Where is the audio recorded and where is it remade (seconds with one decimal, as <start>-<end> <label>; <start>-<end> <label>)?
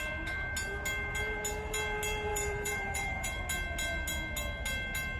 0.0-2.3 recorded; 2.3-3.4 remade; 3.4-5.2 recorded